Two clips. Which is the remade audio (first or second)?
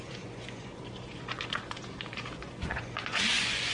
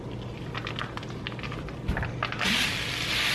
first